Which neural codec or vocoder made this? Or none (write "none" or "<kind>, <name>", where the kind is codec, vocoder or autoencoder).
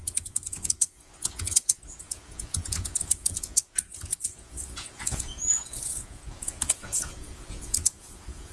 vocoder, Vocos